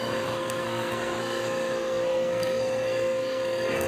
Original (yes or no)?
no